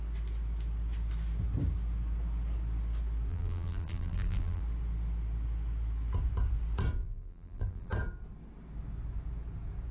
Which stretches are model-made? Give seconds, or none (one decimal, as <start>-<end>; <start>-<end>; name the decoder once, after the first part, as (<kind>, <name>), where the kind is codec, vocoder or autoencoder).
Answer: 3.3-4.6 (vocoder, BigVGAN v2); 7.0-7.9